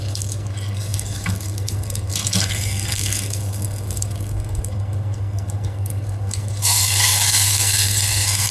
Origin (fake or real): fake